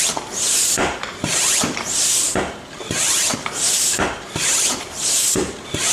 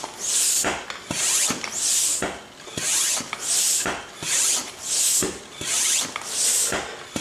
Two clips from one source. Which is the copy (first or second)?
first